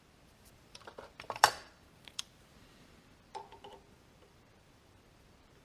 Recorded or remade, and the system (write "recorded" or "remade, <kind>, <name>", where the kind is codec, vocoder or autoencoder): remade, vocoder, BigVGAN v2